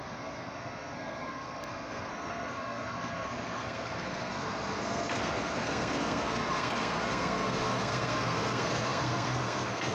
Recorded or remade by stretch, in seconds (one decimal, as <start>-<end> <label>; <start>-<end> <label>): 0.0-9.9 remade